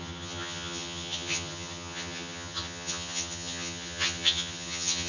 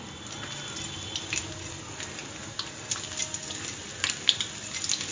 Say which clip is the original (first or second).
second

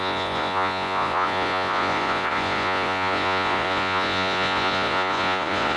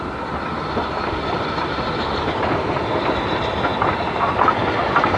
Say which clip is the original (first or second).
second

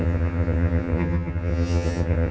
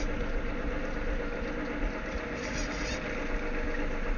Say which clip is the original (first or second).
second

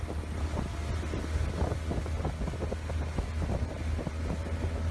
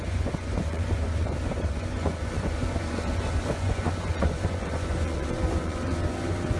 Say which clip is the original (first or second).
first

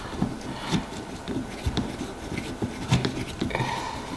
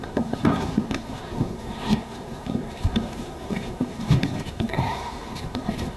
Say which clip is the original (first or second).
first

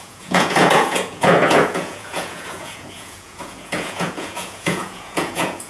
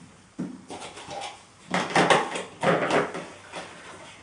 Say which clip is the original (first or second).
second